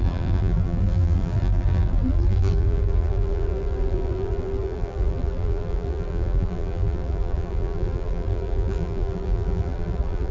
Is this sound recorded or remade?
remade